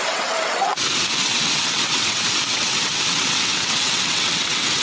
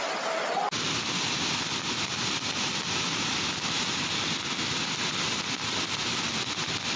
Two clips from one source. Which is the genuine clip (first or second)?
second